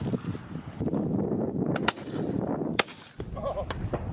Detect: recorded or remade remade